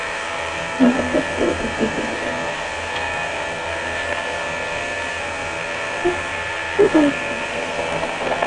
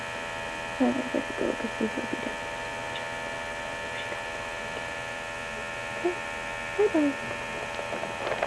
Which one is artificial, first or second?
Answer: first